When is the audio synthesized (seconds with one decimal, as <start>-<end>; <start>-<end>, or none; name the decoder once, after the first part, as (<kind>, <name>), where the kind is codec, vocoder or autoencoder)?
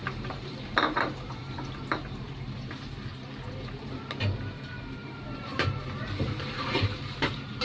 0.0-7.6 (vocoder, BigVGAN v2)